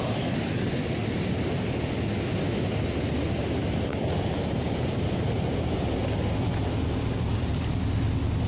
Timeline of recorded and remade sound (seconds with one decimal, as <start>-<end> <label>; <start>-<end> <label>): 0.0-8.5 recorded